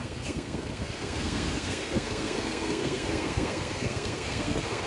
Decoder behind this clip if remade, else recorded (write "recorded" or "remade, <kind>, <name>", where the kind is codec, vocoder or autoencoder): remade, codec, SNAC